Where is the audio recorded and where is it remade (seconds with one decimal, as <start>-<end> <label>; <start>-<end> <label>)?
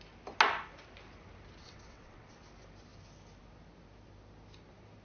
0.0-1.6 recorded; 1.6-2.3 remade; 2.3-5.0 recorded